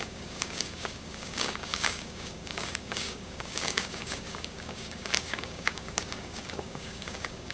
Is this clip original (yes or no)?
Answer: no